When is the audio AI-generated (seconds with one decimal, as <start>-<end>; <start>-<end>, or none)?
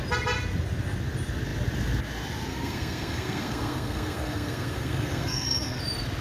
2.5-5.8